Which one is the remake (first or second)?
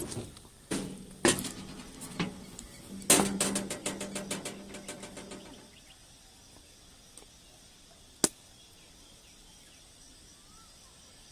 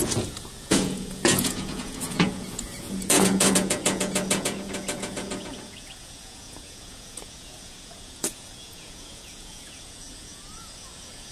second